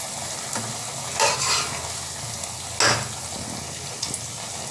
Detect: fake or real real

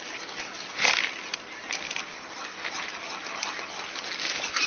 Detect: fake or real real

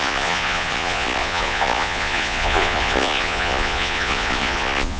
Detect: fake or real fake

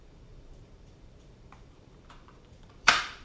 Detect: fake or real fake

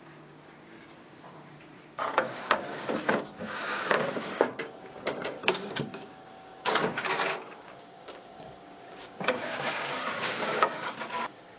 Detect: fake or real fake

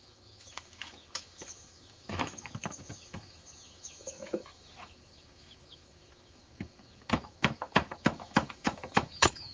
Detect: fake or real fake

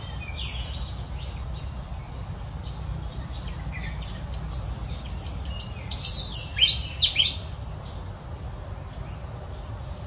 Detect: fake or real real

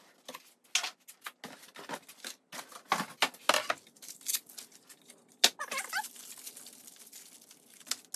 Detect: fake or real real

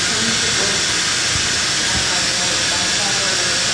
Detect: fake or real real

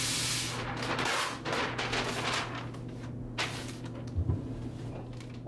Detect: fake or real real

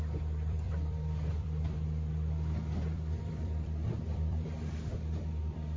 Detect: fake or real fake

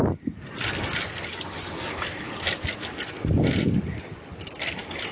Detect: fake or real real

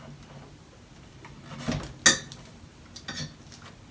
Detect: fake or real real